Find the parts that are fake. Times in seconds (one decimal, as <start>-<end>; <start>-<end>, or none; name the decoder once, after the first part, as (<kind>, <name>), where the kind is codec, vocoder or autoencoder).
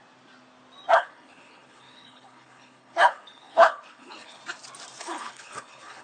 1.0-4.4 (codec, HILCodec); 5.0-6.0